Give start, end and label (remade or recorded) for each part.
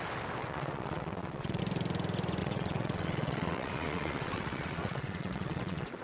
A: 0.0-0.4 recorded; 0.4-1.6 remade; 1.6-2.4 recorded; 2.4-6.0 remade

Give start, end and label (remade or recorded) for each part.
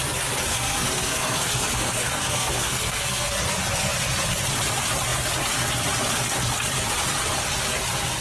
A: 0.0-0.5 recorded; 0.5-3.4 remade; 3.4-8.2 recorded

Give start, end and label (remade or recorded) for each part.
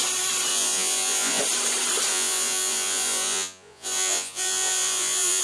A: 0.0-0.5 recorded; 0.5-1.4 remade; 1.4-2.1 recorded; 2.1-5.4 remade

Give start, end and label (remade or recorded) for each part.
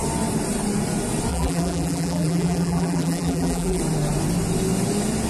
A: 0.0-1.3 recorded; 1.3-3.8 remade; 3.8-5.3 recorded